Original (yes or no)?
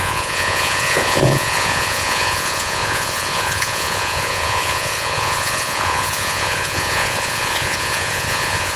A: no